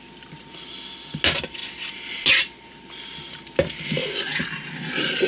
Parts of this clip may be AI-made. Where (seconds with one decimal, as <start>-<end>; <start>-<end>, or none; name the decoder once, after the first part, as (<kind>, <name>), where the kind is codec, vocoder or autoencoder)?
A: none